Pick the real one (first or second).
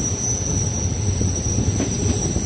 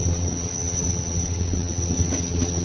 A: first